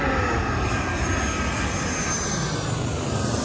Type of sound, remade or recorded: recorded